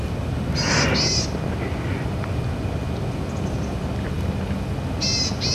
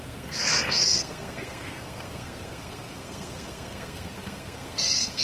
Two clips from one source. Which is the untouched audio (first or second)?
first